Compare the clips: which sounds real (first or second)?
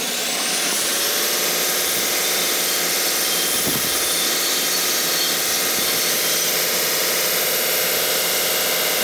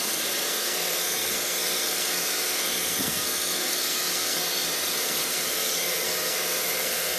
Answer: first